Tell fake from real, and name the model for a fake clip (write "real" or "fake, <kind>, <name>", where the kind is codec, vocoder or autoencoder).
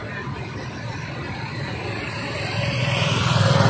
real